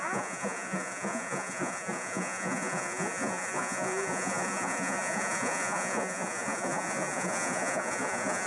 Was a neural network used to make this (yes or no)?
yes